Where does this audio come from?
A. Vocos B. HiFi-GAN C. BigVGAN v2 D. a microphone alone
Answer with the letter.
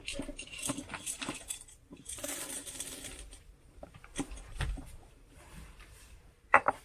C